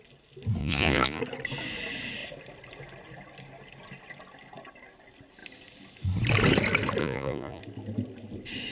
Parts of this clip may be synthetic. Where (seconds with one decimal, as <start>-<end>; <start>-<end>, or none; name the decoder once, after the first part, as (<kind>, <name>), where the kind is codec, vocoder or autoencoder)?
0.6-1.2 (vocoder, Vocos); 7.0-7.6